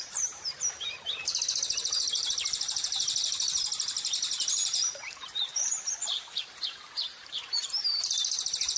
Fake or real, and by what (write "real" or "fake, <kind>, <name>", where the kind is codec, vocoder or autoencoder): fake, vocoder, BigVGAN v2